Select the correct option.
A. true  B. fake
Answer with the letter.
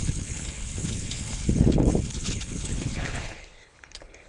B